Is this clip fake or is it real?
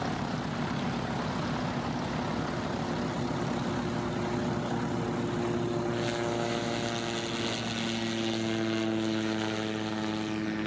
real